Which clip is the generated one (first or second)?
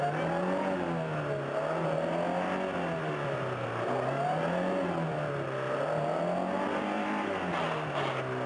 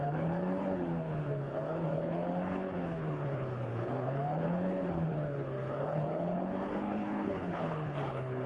second